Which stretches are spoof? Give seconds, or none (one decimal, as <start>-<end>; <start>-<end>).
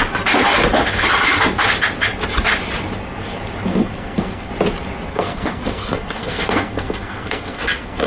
3.7-4.5; 5.1-8.1